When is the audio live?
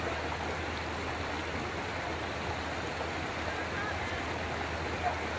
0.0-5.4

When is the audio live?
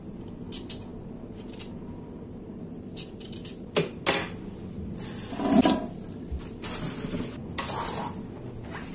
0.0-8.9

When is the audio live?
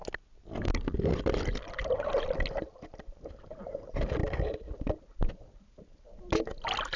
0.0-7.0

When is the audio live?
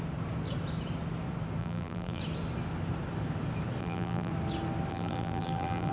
0.0-1.6; 2.2-3.8; 4.3-4.9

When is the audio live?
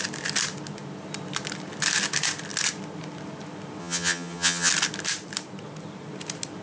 0.0-3.8; 4.7-6.6